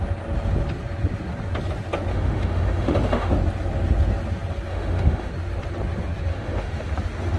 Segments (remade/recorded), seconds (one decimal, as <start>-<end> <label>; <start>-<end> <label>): 0.0-2.1 recorded; 2.1-3.3 remade; 3.3-4.7 recorded; 4.7-5.3 remade; 5.3-6.3 recorded; 6.3-6.9 remade; 6.9-7.4 recorded